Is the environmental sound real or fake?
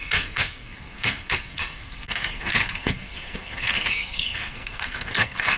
fake